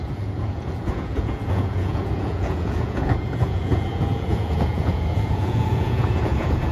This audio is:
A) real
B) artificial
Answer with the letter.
B